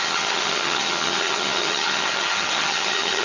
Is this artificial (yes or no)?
yes